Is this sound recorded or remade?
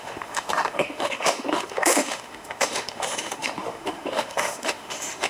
remade